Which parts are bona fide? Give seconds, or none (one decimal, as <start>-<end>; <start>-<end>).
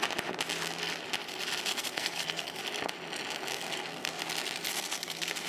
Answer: 0.0-1.7; 2.6-3.5; 4.2-4.7